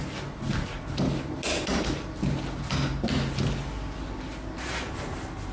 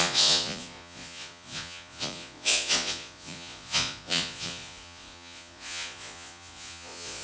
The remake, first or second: second